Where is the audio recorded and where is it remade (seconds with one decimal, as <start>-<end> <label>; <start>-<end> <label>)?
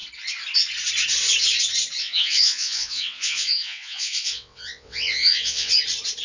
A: 0.0-2.0 recorded; 2.0-5.7 remade; 5.7-6.2 recorded